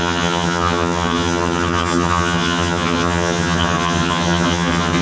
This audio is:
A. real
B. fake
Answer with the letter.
B